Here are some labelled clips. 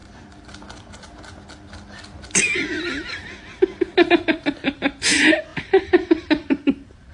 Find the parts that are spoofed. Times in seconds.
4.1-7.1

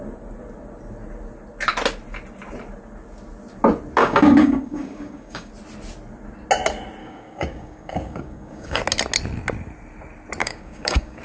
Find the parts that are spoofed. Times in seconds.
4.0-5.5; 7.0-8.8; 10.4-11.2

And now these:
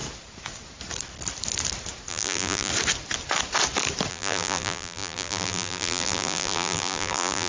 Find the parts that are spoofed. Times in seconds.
2.1-2.7; 4.1-7.5